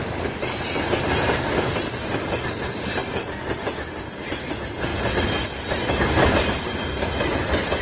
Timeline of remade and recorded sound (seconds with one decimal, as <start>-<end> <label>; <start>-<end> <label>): 0.0-7.8 recorded